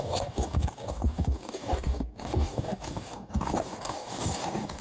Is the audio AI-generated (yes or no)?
yes